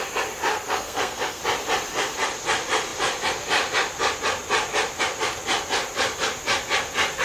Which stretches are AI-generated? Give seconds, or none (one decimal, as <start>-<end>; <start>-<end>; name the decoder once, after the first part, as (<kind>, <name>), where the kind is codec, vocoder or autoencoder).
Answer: 0.5-1.4 (codec, SNAC)